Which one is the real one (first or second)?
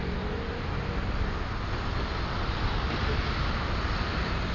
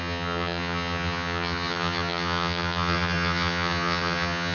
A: first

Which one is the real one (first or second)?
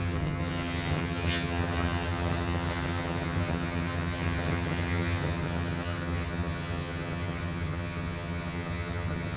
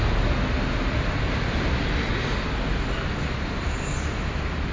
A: second